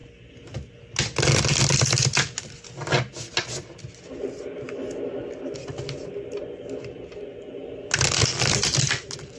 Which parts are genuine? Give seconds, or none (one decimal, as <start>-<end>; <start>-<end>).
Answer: 0.0-9.4

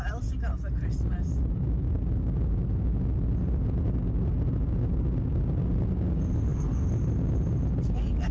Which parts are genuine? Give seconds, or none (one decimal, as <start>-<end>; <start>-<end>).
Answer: 0.0-8.3

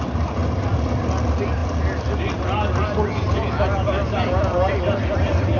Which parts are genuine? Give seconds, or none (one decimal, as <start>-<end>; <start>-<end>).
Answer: 0.0-5.6

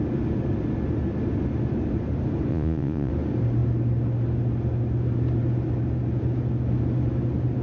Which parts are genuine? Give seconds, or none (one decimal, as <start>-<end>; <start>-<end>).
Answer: 0.0-2.5; 3.1-7.6